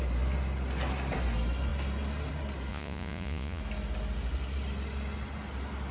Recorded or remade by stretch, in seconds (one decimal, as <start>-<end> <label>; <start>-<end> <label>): 0.0-2.7 recorded; 2.7-3.6 remade; 3.6-5.9 recorded